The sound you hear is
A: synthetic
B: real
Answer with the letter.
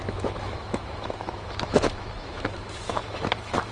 A